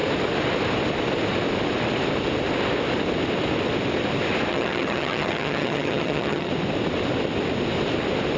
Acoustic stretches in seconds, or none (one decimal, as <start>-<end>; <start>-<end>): 0.0-4.5; 6.5-8.4